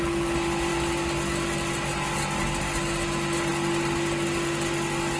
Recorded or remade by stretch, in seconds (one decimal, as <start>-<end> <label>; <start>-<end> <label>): 0.0-5.2 recorded